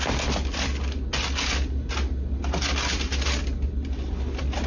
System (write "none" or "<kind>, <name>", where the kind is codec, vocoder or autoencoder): none